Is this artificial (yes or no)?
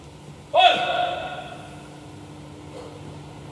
no